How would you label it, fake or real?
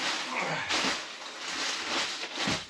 real